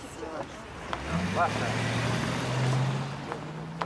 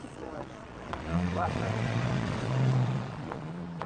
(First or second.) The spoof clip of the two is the second